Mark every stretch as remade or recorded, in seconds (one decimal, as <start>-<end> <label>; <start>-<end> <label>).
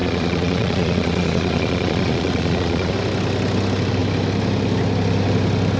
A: 0.0-2.9 remade; 2.9-5.8 recorded